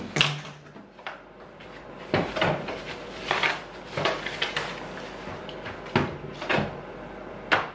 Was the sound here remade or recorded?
recorded